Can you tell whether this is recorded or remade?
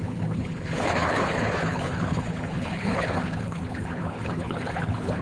remade